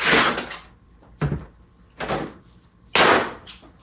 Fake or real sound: real